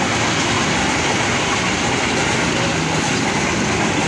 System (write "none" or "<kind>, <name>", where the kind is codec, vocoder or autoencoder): none